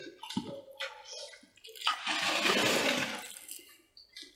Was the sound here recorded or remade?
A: recorded